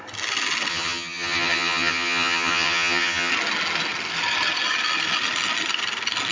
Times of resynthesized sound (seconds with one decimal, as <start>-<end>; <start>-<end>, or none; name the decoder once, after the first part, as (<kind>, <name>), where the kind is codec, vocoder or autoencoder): 0.7-3.3 (vocoder, HiFi-GAN)